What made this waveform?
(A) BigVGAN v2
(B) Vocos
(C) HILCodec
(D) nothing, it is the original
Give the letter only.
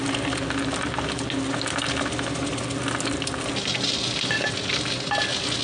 D